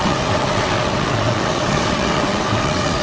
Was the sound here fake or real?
fake